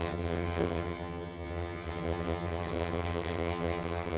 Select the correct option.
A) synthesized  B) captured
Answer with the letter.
A